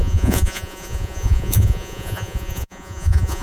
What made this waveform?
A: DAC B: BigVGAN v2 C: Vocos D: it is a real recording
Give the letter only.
C